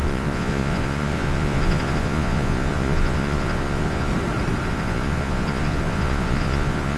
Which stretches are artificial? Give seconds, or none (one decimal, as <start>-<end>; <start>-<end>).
0.0-4.1; 4.7-7.0